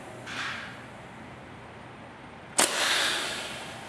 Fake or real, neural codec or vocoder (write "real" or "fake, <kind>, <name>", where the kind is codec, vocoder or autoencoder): real